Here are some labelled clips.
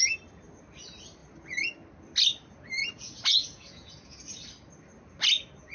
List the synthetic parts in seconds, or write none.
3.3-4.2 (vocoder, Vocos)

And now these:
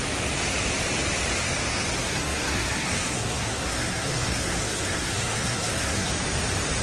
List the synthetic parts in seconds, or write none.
2.0-6.1 (codec, SNAC)